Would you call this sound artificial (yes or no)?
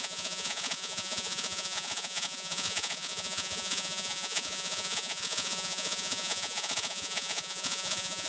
yes